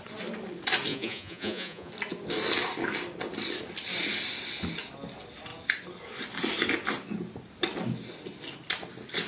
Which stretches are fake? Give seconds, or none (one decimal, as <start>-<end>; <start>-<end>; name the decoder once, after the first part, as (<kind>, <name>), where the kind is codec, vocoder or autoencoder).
0.9-1.9 (vocoder, Vocos)